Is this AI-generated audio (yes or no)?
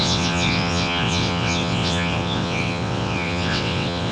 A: yes